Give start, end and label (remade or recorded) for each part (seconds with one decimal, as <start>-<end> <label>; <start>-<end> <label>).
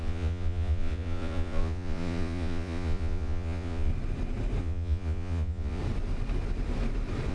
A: 0.0-3.9 remade; 3.9-4.6 recorded; 4.6-5.8 remade; 5.8-7.3 recorded